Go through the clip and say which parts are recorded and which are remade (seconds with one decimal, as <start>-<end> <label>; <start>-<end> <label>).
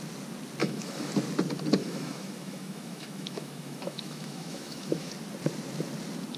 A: 0.0-0.6 recorded; 0.6-1.1 remade; 1.1-1.8 recorded; 1.8-5.1 remade; 5.1-6.4 recorded